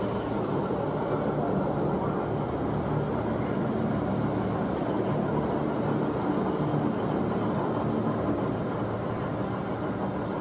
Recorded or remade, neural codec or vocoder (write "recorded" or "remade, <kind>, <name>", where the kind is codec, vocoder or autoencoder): recorded